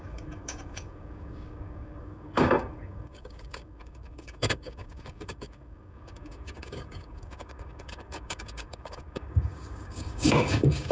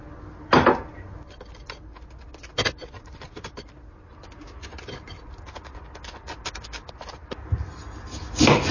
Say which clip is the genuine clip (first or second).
second